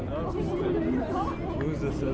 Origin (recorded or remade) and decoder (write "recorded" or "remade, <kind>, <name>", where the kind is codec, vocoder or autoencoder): recorded